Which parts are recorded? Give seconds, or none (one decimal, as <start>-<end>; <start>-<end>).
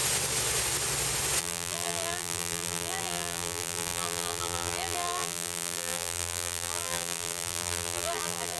0.0-1.4